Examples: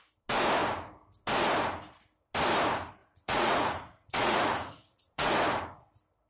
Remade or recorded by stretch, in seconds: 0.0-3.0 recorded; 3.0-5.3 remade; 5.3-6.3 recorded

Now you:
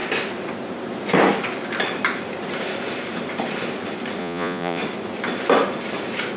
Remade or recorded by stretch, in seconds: 0.0-4.2 recorded; 4.2-4.8 remade; 4.8-6.4 recorded